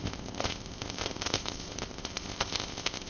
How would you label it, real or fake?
fake